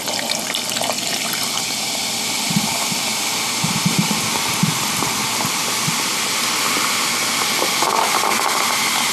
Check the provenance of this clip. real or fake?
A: real